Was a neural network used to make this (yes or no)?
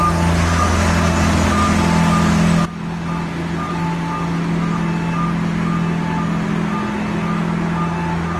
no